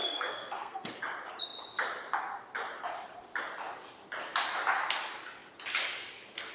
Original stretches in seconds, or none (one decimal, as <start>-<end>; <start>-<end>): 0.9-6.5